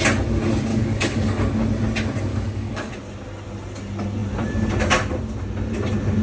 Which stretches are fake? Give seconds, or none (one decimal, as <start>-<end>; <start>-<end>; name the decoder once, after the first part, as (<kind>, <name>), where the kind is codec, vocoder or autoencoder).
0.7-1.4 (codec, DAC); 2.3-2.9